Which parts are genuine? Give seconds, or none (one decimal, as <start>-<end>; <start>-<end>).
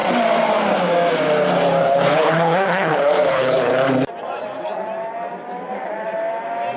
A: 0.0-1.8; 3.7-6.8